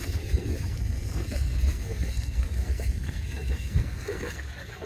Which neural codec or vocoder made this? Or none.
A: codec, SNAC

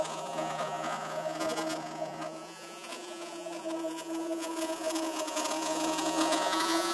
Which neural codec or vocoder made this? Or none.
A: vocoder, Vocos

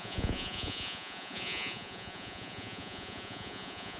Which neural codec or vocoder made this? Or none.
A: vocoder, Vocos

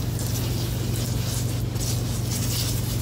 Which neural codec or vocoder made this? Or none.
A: none